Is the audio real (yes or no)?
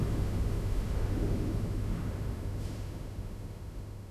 no